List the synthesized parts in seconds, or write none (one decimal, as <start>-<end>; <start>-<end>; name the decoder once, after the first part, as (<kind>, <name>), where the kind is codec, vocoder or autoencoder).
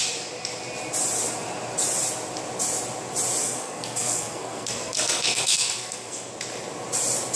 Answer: 3.4-6.3 (codec, SNAC)